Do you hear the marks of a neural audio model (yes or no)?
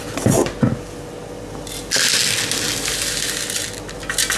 no